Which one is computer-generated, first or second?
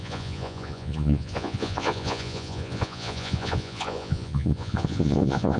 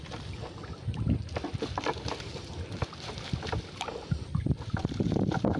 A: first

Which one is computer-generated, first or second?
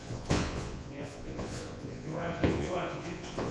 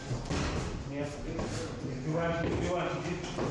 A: first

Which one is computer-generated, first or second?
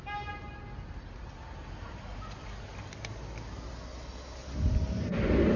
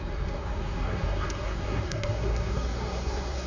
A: second